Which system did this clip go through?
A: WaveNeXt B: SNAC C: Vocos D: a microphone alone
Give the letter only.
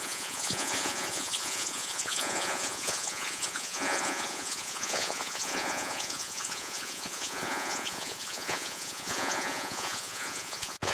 C